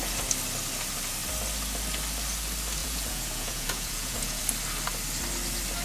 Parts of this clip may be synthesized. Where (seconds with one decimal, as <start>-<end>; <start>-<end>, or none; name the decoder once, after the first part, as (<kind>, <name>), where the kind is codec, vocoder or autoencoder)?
2.8-4.4 (vocoder, Vocos)